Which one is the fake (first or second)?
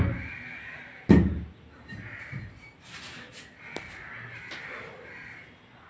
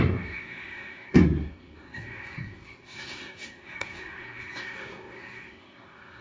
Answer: second